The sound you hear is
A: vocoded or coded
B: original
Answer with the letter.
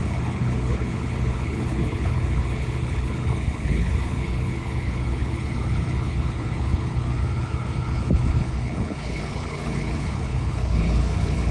A